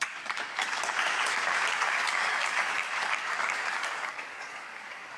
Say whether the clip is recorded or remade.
remade